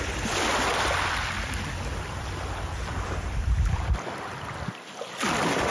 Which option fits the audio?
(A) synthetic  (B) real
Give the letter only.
B